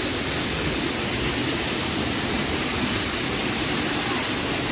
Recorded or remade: recorded